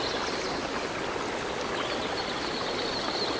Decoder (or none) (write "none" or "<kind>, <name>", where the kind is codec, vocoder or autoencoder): none